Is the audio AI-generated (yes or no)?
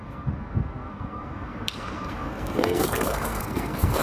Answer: yes